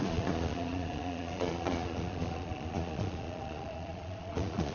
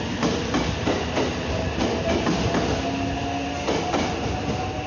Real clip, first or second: second